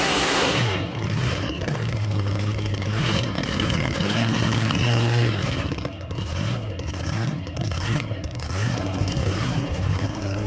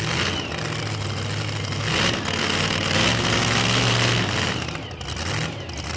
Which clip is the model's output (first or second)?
first